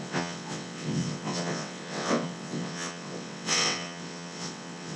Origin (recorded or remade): remade